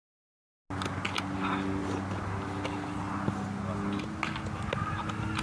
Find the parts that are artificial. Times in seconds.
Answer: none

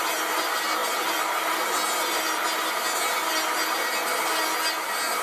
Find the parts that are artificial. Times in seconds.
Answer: none

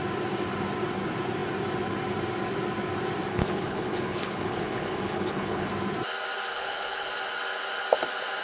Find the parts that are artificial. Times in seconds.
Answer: 3.3-5.7 (codec, HILCodec); 6.5-7.1

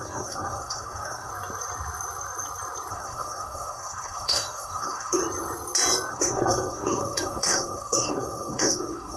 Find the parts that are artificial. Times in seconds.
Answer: 0.0-1.3 (codec, SNAC); 2.9-5.2; 6.1-9.2

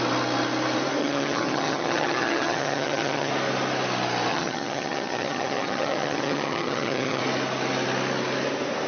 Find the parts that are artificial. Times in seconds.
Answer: 1.0-3.3 (vocoder, HiFi-GAN); 4.3-7.2